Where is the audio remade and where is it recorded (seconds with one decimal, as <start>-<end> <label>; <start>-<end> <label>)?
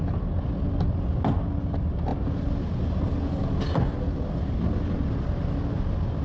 0.0-6.2 recorded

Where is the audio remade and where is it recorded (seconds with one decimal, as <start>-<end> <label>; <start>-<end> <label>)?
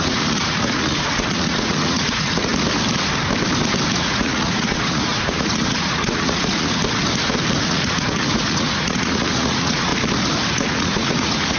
0.0-2.5 remade; 2.5-4.0 recorded; 4.0-6.8 remade; 6.8-7.6 recorded; 7.6-9.9 remade; 9.9-10.5 recorded; 10.5-11.6 remade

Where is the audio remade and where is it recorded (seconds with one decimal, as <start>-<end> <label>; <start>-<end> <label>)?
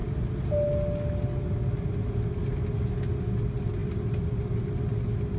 0.0-5.4 recorded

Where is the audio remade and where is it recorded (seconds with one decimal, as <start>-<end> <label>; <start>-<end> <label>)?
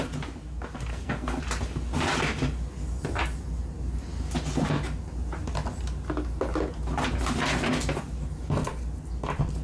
0.0-0.9 recorded; 0.9-1.4 remade; 1.4-9.6 recorded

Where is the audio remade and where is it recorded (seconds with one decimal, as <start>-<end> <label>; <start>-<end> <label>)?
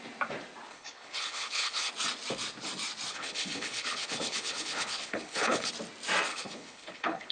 0.0-0.7 recorded; 0.7-1.9 remade; 1.9-3.1 recorded; 3.1-5.7 remade; 5.7-6.3 recorded; 6.3-7.3 remade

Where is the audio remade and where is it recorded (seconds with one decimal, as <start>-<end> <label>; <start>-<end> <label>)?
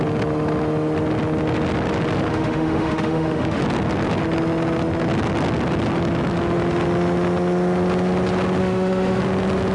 0.0-2.3 recorded; 2.3-3.6 remade; 3.6-8.6 recorded; 8.6-9.2 remade; 9.2-9.7 recorded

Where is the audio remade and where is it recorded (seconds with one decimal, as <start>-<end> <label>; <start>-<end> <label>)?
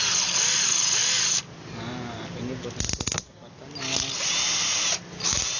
0.0-5.6 recorded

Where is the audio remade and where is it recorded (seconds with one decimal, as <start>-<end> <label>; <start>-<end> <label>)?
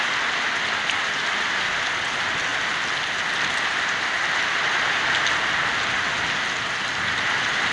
0.0-7.7 recorded